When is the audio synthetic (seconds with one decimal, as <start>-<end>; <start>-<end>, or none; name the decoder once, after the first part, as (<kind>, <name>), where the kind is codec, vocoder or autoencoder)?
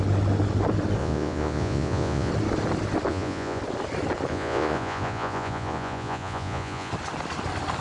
1.0-2.3 (vocoder, Vocos); 3.1-3.6; 4.3-6.9